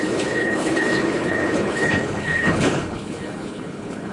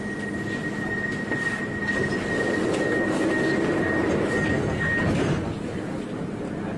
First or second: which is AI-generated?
first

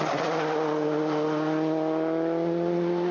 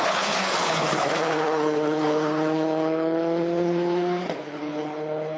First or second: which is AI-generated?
second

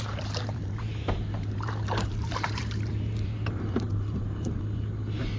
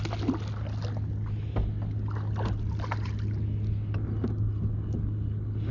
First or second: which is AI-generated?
first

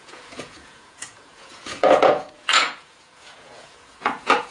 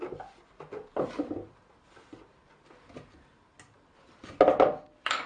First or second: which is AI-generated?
first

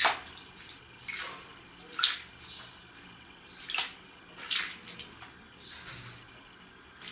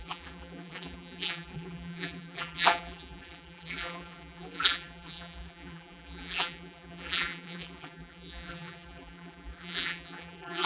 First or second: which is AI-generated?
second